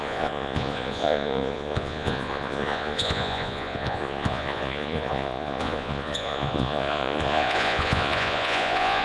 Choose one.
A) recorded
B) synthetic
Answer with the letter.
B